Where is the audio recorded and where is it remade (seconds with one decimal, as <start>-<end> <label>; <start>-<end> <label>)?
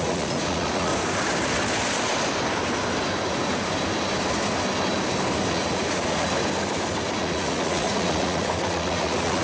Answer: 0.0-0.9 remade; 0.9-5.5 recorded; 5.5-6.3 remade; 6.3-7.1 recorded; 7.1-9.4 remade